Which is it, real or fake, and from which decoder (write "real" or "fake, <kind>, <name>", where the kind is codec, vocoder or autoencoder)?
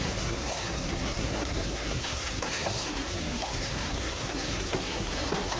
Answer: fake, codec, SNAC